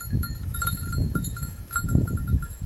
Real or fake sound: fake